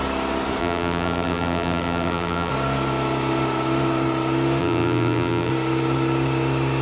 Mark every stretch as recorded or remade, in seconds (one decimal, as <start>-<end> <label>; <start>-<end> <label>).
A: 0.0-0.6 recorded; 0.6-2.5 remade; 2.5-4.6 recorded; 4.6-5.5 remade; 5.5-6.8 recorded